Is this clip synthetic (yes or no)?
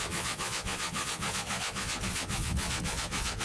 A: yes